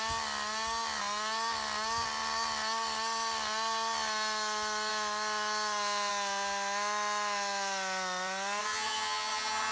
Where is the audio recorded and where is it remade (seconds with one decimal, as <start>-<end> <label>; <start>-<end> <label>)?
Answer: 0.0-8.6 recorded; 8.6-9.7 remade